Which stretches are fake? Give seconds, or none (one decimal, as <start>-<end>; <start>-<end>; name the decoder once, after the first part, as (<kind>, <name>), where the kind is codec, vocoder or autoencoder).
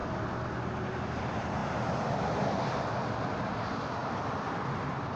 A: 1.0-1.6 (vocoder, BigVGAN v2); 2.7-4.0; 4.7-5.2